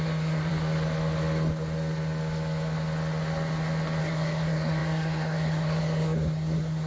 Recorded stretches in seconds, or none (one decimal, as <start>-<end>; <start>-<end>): 0.5-4.0